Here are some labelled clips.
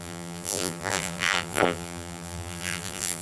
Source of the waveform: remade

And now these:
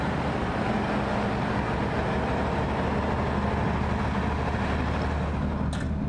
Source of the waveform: recorded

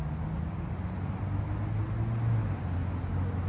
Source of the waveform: recorded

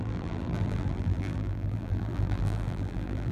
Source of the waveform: remade